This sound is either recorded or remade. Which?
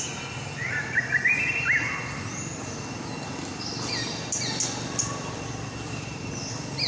recorded